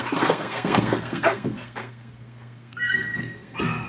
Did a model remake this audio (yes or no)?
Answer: yes